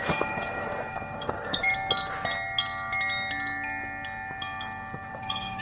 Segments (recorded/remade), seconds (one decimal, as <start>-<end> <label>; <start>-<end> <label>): 0.0-1.7 remade; 1.7-5.1 recorded; 5.1-5.6 remade